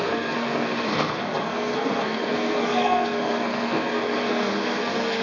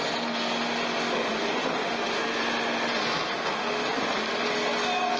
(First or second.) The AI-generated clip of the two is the first